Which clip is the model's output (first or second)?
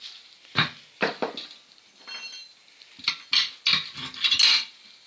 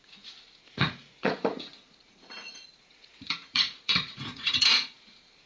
second